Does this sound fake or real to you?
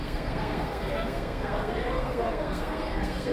fake